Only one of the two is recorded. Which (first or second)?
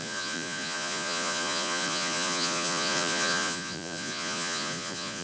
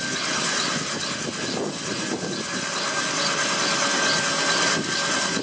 second